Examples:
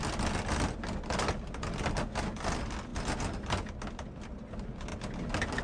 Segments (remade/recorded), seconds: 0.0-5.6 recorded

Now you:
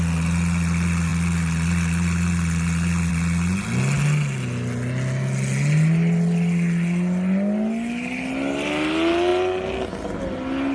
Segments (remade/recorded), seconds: 0.0-10.7 recorded

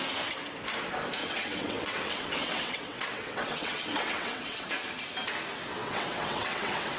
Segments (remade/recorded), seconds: 0.0-1.2 recorded; 1.2-4.7 remade; 4.7-5.8 recorded; 5.8-7.0 remade